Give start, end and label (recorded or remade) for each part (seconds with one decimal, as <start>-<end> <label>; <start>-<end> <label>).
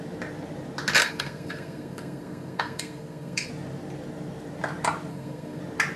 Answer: 0.0-1.0 recorded; 1.0-3.5 remade; 3.5-5.1 recorded; 5.1-5.6 remade; 5.6-6.0 recorded